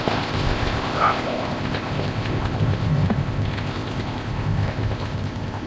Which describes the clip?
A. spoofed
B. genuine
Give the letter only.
A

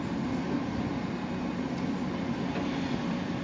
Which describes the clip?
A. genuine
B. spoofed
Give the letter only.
A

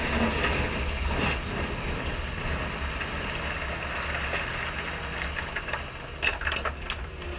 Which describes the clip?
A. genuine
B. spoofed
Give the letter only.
A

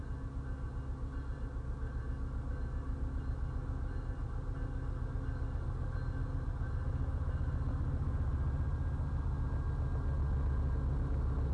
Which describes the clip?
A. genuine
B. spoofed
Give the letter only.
A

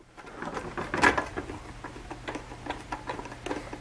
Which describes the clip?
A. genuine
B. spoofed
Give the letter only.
A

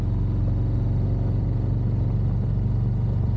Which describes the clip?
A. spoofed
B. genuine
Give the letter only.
B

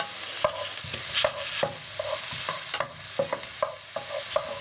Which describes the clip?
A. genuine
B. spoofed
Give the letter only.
A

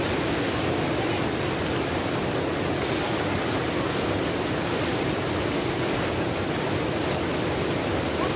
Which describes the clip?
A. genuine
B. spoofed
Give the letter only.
A